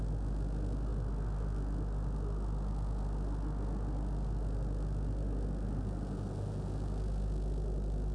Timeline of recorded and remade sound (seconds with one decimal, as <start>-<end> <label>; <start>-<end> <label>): 0.0-8.1 recorded